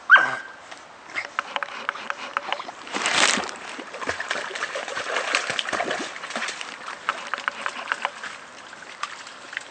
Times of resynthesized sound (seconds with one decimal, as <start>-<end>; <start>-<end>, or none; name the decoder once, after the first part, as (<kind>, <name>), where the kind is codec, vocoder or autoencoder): 2.5-5.5 (vocoder, BigVGAN v2)